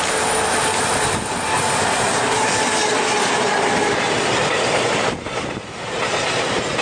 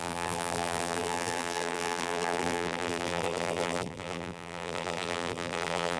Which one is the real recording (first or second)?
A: first